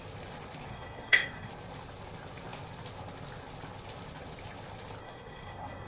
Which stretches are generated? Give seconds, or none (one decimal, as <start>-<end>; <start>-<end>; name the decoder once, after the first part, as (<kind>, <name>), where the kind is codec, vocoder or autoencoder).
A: 0.7-1.5 (codec, SNAC); 5.0-5.9

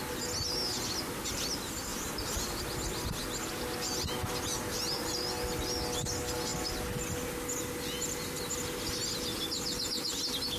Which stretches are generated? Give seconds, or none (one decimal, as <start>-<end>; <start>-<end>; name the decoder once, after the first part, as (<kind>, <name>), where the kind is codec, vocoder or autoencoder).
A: none

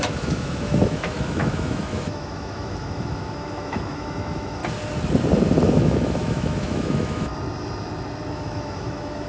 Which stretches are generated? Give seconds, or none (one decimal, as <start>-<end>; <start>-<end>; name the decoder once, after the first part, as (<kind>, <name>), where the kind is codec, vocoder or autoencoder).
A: 0.0-4.6 (autoencoder, DAC-VAE); 5.7-7.3; 8.3-9.3